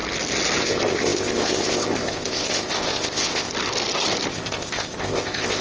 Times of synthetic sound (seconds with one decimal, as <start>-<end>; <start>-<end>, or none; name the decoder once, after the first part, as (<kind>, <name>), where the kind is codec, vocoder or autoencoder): 0.6-3.5 (codec, ZipCodec); 4.3-5.6